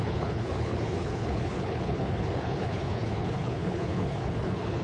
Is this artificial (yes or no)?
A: yes